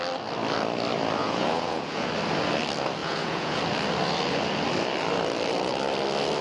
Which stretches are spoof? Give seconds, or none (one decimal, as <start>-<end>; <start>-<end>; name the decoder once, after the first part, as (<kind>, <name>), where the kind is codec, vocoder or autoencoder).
1.2-2.1 (vocoder, Vocos); 3.0-3.6